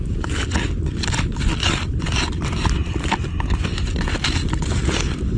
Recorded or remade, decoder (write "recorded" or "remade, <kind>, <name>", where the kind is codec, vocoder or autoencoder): recorded